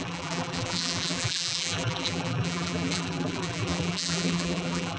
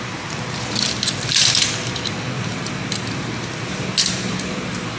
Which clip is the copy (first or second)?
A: first